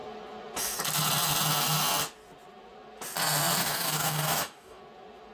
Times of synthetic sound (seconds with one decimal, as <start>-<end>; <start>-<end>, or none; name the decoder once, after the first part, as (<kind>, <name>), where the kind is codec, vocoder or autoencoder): 3.6-4.8 (codec, DAC)